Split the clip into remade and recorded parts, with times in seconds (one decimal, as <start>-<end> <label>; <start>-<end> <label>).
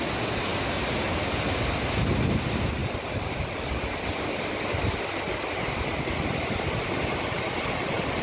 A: 0.0-8.2 recorded